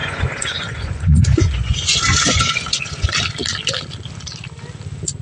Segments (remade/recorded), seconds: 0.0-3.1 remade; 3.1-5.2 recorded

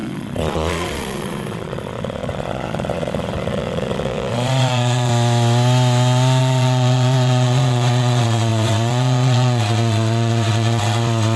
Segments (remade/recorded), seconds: 0.0-5.1 remade; 5.1-6.4 recorded; 6.4-11.4 remade

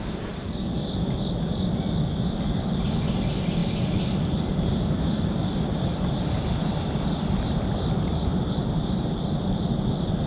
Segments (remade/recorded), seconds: 0.0-10.3 recorded

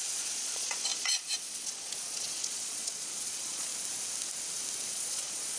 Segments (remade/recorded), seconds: 0.0-3.7 remade; 3.7-4.9 recorded; 4.9-5.6 remade

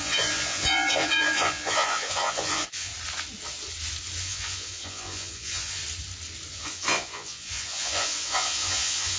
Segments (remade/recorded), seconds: 0.0-2.9 remade; 2.9-4.2 recorded; 4.2-5.8 remade; 5.8-6.5 recorded; 6.5-9.2 remade

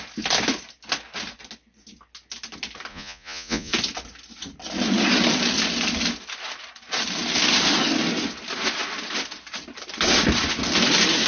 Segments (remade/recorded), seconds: 0.0-2.9 recorded; 2.9-3.7 remade; 3.7-11.3 recorded

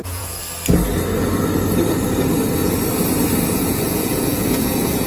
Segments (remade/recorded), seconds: 0.0-0.4 remade; 0.4-3.5 recorded; 3.5-5.1 remade

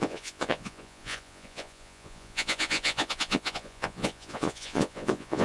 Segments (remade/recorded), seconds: 0.0-5.4 remade